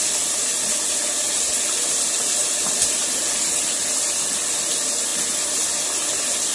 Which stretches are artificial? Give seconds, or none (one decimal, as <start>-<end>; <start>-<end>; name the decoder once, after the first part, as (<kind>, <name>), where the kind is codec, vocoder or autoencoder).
none